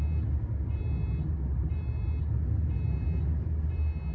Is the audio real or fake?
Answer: real